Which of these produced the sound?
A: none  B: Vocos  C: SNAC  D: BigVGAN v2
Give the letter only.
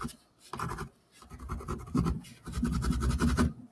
A